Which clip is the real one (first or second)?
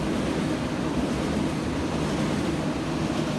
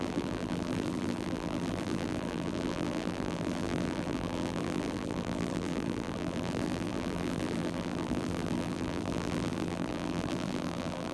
first